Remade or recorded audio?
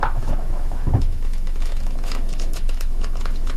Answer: remade